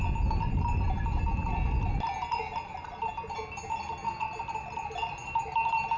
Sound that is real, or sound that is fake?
real